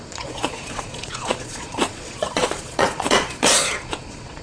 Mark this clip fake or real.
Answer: fake